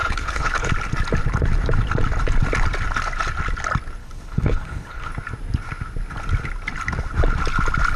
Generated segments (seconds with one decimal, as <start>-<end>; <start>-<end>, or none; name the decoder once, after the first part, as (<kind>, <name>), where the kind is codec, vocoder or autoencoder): 0.0-0.7 (codec, HILCodec); 4.0-5.1